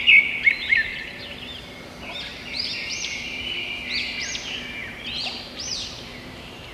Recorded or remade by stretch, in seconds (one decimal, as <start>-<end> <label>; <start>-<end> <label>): 0.0-0.9 recorded; 0.9-1.4 remade; 1.4-2.3 recorded; 2.3-3.4 remade; 3.4-4.8 recorded; 4.8-6.7 remade